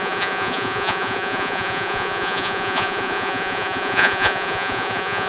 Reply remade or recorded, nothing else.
remade